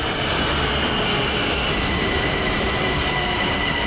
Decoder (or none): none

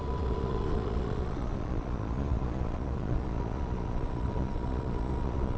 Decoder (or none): vocoder, Vocos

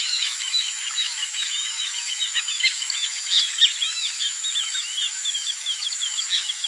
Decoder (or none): autoencoder, DAC-VAE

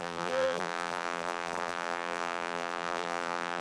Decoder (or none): vocoder, BigVGAN v2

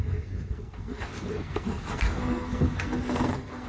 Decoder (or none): codec, SNAC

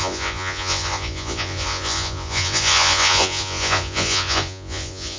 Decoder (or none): vocoder, Vocos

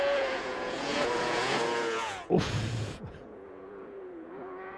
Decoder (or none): vocoder, Vocos